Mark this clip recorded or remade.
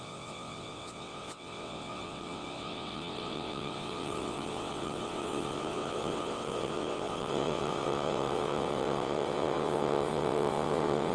remade